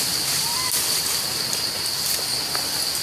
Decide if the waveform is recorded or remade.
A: recorded